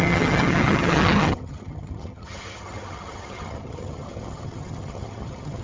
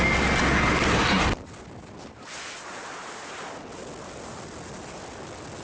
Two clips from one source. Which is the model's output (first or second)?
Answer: first